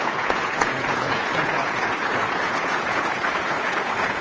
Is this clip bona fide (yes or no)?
no